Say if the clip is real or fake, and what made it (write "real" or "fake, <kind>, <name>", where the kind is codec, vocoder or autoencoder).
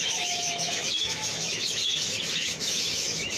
fake, autoencoder, DAC-VAE